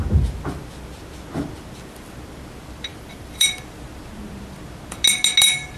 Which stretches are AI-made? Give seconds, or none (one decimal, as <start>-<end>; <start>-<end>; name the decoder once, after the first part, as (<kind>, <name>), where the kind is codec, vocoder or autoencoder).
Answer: 2.9-3.6 (vocoder, BigVGAN v2)